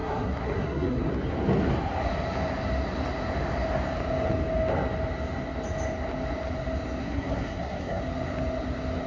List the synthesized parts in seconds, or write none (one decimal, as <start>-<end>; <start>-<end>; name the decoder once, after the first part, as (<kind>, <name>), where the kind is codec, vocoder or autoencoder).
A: 0.0-1.1 (codec, SNAC); 7.0-8.0